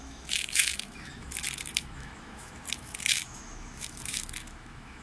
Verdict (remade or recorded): remade